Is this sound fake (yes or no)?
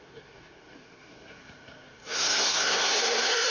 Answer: yes